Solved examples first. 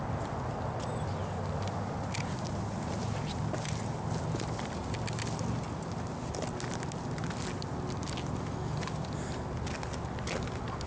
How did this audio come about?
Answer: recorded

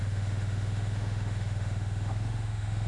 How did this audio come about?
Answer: remade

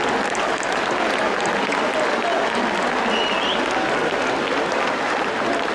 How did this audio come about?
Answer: recorded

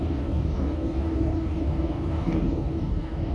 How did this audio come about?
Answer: remade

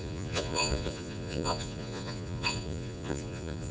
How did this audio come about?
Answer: remade